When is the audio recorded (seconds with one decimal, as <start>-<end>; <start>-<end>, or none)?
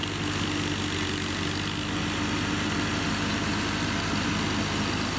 0.0-5.2